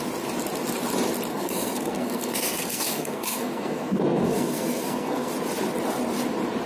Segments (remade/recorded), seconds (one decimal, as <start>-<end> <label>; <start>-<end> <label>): 0.0-1.3 recorded; 1.3-5.3 remade; 5.3-6.7 recorded